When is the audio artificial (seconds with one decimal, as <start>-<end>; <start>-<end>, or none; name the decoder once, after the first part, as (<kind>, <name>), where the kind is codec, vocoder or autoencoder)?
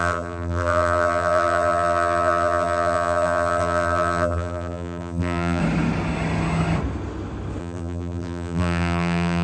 0.0-5.6 (vocoder, BigVGAN v2); 7.6-9.4